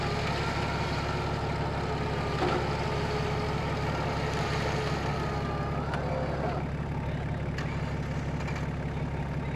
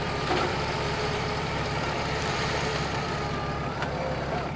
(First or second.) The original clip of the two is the first